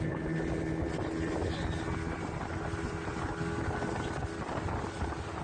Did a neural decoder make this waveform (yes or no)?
no